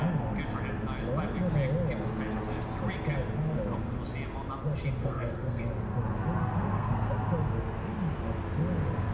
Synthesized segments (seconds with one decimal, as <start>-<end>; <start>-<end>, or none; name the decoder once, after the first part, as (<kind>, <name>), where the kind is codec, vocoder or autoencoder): 5.0-5.6 (codec, SNAC); 6.4-7.1